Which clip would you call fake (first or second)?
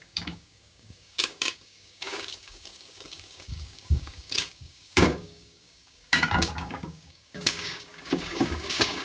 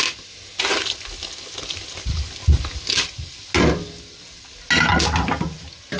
first